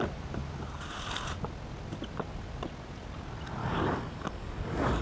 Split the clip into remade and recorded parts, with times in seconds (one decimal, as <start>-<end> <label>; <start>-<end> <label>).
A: 0.0-3.6 recorded; 3.6-5.0 remade